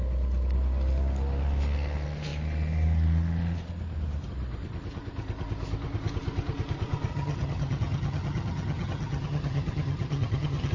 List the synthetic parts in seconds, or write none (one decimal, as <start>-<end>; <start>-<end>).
7.1-10.7